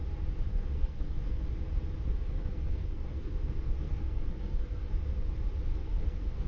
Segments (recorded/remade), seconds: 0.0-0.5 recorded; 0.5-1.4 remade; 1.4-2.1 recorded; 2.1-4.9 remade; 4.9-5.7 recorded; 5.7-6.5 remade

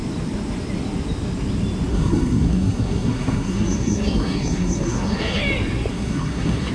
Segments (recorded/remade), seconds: 0.0-1.9 recorded; 1.9-5.4 remade; 5.4-5.9 recorded; 5.9-6.7 remade

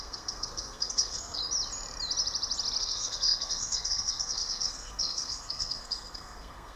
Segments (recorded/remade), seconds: 0.0-1.4 remade; 1.4-2.8 recorded; 2.8-6.8 remade